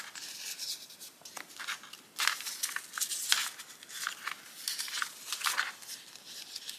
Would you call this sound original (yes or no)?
yes